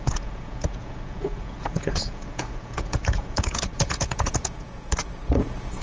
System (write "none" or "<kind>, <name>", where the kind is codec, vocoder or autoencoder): vocoder, Vocos